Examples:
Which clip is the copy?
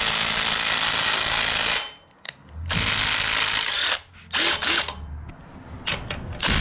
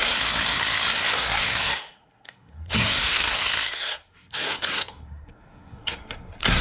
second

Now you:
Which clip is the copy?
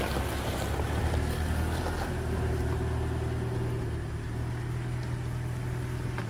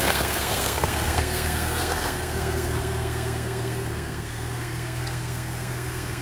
second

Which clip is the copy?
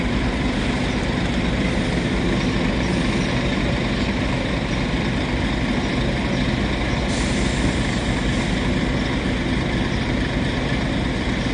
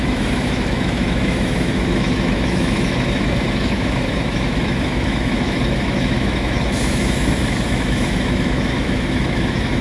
second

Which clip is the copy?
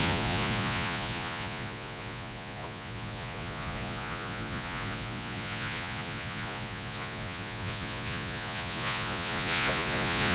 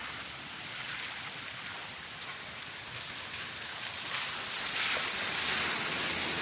first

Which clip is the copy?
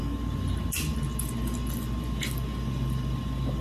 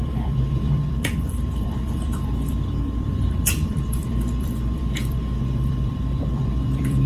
second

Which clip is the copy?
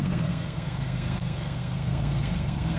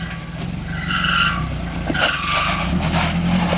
first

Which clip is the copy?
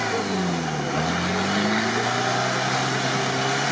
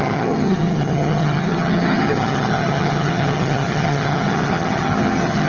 second